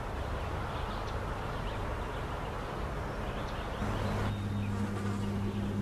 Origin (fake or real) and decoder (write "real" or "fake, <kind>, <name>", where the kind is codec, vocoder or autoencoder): real